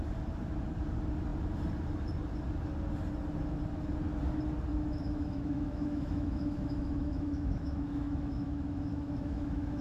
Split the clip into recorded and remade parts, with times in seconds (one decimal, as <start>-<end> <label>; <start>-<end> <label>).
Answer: 0.0-4.7 recorded; 4.7-9.8 remade